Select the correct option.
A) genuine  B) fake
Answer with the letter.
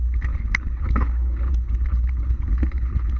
B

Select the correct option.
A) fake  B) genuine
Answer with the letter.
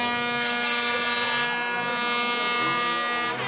B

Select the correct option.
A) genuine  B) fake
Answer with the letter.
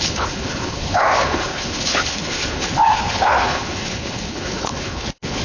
B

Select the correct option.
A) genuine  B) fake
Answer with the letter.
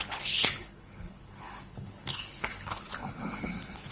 B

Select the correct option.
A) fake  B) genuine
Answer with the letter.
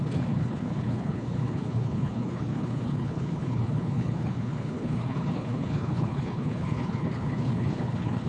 A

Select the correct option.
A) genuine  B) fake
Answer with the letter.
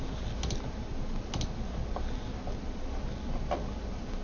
A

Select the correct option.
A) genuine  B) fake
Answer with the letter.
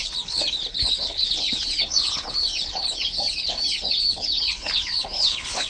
B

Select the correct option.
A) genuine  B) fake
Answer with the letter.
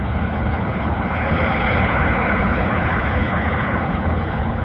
B